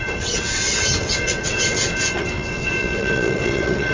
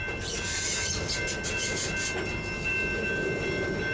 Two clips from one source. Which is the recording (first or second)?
second